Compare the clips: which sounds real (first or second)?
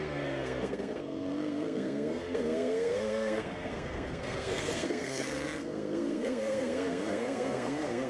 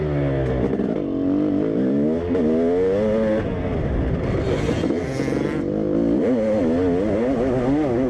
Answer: second